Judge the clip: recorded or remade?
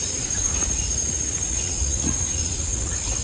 remade